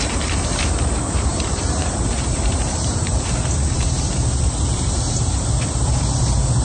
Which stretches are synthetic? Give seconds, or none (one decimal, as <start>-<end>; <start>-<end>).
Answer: 1.3-5.3